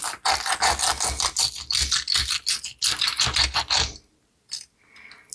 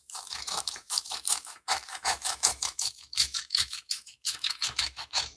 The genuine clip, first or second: first